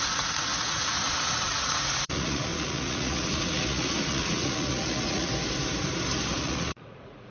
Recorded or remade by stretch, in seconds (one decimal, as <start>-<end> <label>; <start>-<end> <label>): 0.0-5.3 remade; 5.3-6.4 recorded; 6.4-7.3 remade